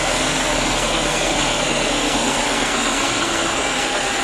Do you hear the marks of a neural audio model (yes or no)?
yes